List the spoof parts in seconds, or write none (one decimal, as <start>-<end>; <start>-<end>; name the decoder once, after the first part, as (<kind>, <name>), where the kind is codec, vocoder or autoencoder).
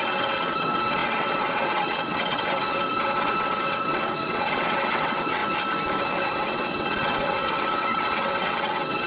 0.0-5.4 (vocoder, WaveNeXt); 6.2-9.1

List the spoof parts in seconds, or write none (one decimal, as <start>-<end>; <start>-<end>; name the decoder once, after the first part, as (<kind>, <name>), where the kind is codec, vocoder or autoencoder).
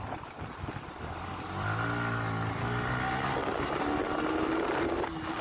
none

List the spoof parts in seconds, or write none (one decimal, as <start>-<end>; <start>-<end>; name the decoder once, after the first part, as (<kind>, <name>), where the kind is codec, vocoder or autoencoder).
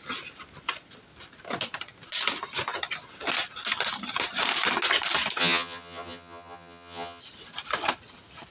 5.4-7.2 (vocoder, HiFi-GAN)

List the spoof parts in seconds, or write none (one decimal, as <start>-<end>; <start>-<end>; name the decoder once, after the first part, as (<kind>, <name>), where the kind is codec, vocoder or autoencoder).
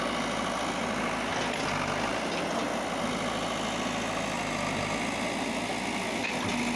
none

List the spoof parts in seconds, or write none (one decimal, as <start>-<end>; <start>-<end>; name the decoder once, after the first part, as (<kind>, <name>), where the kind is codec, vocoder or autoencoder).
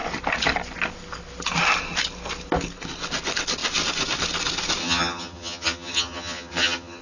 4.8-7.0 (vocoder, HiFi-GAN)